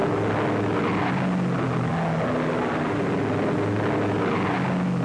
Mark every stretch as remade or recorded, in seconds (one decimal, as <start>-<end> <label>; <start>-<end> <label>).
0.0-5.0 recorded